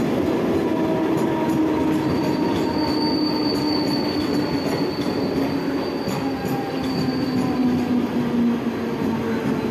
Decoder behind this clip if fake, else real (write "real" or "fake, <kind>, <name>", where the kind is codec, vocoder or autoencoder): real